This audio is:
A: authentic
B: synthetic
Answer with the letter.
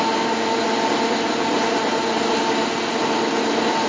A